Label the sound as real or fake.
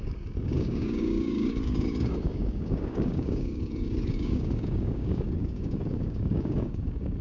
fake